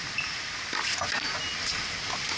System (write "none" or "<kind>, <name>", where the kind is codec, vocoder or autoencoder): none